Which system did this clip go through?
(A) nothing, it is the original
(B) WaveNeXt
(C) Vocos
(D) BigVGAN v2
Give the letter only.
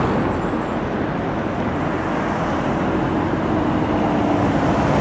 A